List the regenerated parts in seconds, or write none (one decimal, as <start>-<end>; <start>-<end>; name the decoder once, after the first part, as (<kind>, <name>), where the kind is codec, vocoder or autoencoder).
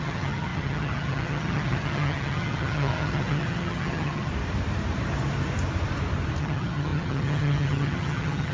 0.0-4.3 (vocoder, HiFi-GAN); 6.4-8.5